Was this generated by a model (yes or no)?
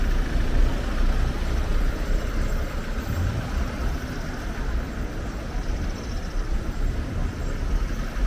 yes